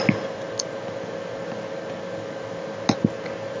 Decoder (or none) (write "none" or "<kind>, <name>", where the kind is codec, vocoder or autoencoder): none